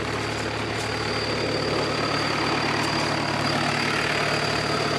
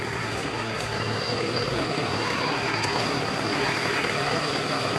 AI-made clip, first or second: second